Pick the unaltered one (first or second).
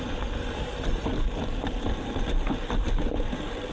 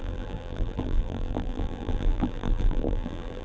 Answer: first